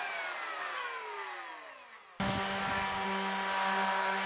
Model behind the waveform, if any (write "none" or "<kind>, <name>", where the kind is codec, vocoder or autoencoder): none